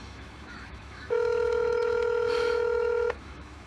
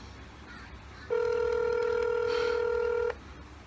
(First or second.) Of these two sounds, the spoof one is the first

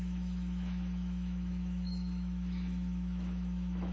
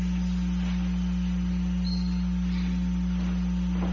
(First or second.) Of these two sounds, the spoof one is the first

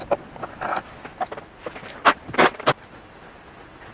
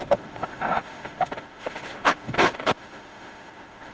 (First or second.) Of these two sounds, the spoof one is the second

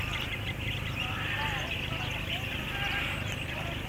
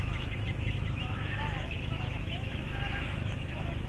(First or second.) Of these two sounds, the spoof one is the second